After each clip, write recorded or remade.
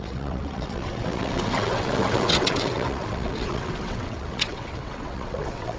remade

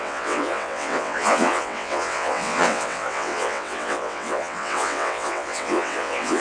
remade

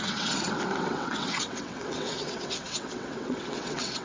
remade